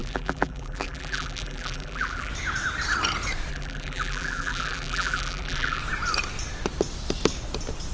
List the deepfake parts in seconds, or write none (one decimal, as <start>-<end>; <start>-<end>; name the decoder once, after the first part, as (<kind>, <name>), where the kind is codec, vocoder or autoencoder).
0.0-2.3 (vocoder, BigVGAN v2); 3.5-5.8